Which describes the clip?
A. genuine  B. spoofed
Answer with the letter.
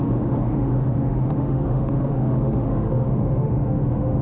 B